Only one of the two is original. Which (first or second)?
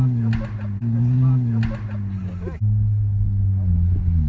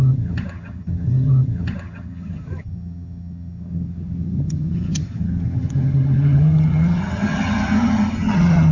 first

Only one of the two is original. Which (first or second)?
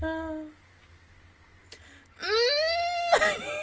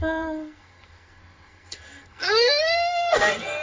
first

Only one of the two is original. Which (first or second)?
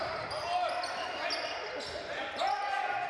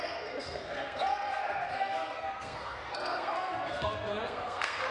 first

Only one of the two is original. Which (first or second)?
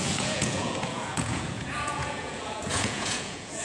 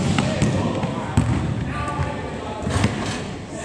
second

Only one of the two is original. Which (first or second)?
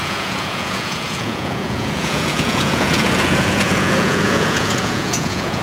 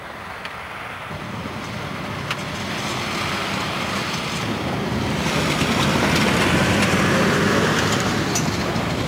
second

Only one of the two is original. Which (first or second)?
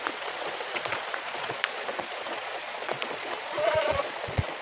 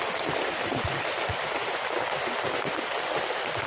second